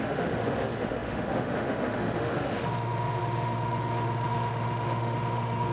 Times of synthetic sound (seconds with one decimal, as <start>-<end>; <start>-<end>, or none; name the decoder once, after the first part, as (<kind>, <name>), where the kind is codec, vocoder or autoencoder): 0.0-5.7 (autoencoder, DAC-VAE)

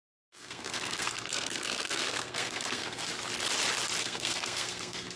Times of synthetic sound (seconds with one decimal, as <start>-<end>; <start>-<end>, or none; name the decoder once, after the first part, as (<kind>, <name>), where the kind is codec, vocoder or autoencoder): 0.0-3.1 (codec, SNAC); 4.0-5.2

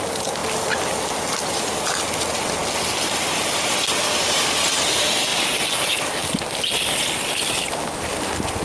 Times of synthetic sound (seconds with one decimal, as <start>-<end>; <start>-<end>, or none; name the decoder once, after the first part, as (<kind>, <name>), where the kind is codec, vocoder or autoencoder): none

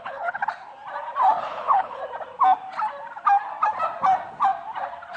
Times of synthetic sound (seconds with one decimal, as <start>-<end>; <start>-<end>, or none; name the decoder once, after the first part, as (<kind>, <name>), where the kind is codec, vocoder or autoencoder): 0.0-0.4 (codec, HILCodec); 1.4-2.0

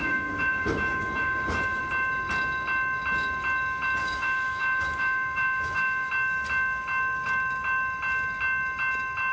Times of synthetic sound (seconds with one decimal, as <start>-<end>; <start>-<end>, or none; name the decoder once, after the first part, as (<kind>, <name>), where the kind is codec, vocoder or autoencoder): 0.0-1.8 (autoencoder, DAC-VAE); 4.0-6.1

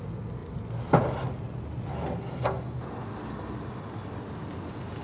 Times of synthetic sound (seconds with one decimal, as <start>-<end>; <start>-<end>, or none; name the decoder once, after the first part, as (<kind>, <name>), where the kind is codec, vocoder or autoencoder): none